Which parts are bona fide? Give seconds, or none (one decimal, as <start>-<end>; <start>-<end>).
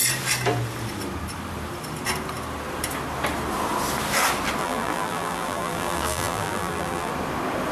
0.0-4.6; 7.1-7.7